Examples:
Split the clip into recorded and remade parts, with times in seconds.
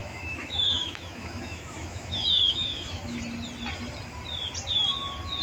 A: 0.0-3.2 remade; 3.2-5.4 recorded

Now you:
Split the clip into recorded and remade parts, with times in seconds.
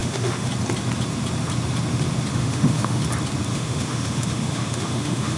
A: 0.0-0.5 remade; 0.5-2.3 recorded; 2.3-3.0 remade; 3.0-3.5 recorded; 3.5-5.4 remade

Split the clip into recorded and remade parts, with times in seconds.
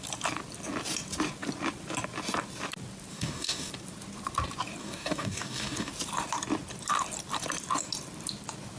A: 0.0-3.1 recorded; 3.1-3.7 remade; 3.7-4.8 recorded; 4.8-5.9 remade; 5.9-8.8 recorded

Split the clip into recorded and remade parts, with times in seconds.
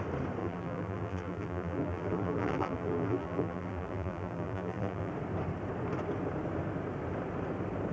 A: 0.0-0.4 recorded; 0.4-5.1 remade; 5.1-7.9 recorded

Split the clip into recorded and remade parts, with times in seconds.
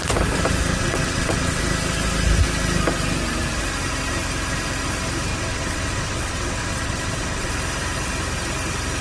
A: 0.0-0.7 recorded; 0.7-1.6 remade; 1.6-5.3 recorded; 5.3-7.5 remade; 7.5-9.0 recorded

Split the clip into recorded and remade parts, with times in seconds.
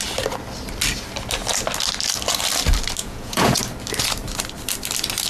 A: 0.0-3.0 recorded; 3.0-3.6 remade; 3.6-5.3 recorded